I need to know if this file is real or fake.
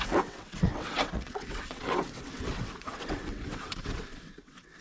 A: fake